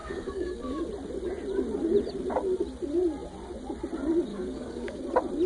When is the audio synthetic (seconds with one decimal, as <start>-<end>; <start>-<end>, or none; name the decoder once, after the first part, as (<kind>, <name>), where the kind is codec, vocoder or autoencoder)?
0.0-0.8 (codec, DAC); 4.3-5.0